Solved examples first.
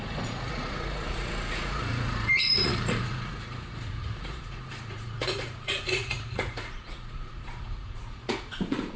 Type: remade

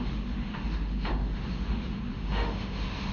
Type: remade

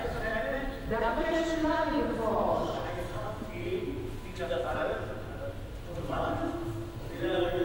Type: recorded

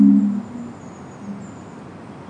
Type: recorded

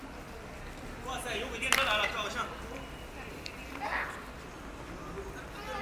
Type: recorded